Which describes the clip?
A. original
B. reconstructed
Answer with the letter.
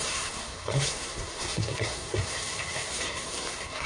B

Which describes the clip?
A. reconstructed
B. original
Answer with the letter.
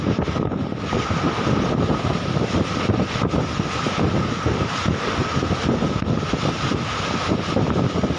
A